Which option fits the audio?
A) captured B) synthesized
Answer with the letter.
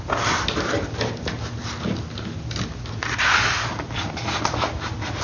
A